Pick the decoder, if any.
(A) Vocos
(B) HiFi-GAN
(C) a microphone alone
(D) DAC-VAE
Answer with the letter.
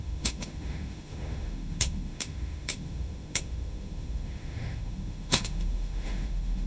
D